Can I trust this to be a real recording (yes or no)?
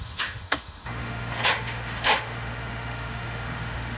no